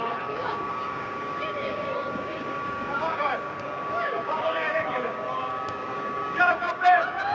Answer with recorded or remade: remade